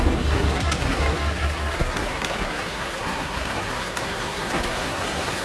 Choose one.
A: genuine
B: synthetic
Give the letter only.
B